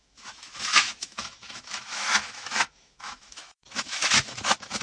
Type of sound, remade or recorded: remade